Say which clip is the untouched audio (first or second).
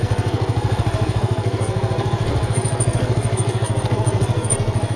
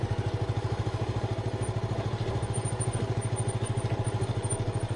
second